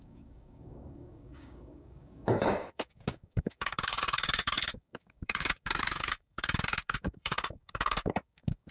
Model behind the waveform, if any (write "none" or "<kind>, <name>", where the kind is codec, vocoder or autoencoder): codec, DAC